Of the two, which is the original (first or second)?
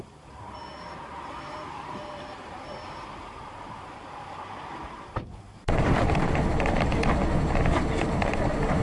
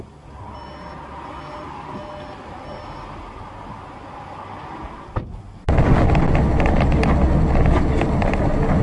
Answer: second